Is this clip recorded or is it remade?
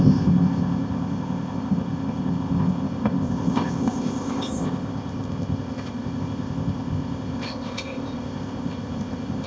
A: remade